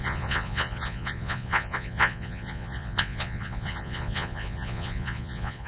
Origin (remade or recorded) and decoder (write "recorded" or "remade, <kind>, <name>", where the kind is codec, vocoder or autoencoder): remade, vocoder, Vocos